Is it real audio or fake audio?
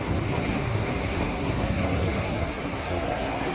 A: fake